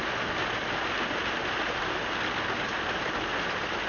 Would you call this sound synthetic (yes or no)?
no